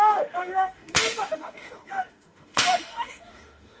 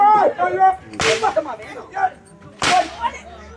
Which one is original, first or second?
second